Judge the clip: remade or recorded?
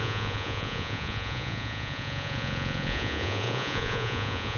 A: remade